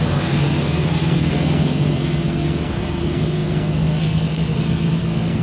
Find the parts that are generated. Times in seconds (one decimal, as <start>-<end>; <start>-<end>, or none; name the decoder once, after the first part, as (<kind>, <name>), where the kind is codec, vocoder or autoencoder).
0.0-5.4 (codec, SNAC)